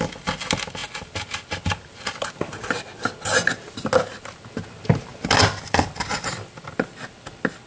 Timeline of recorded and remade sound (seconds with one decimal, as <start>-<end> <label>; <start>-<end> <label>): 0.0-7.7 recorded